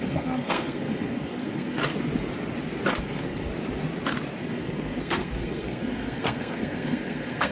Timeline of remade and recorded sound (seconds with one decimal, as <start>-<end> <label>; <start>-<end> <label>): 0.0-1.8 remade; 1.8-3.0 recorded; 3.0-3.5 remade; 3.5-4.4 recorded; 4.4-7.5 remade